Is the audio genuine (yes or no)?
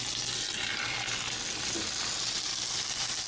yes